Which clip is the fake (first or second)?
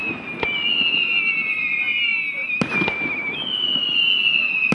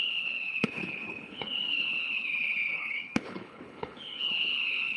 second